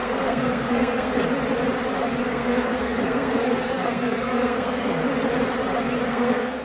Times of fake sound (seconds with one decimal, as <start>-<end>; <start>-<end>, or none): 0.0-1.1; 2.2-5.0; 6.1-6.6